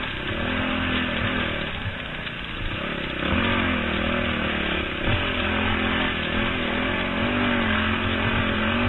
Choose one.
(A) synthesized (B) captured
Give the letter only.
B